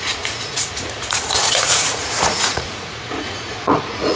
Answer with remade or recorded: remade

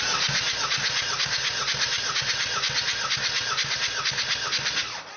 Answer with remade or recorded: recorded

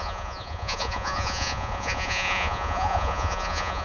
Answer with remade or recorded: remade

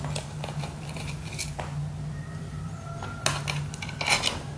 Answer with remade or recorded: recorded